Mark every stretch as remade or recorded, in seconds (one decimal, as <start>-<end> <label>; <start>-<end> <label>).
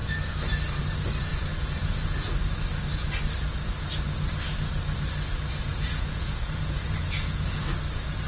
0.0-1.3 recorded; 1.3-2.3 remade; 2.3-5.7 recorded; 5.7-7.6 remade; 7.6-8.3 recorded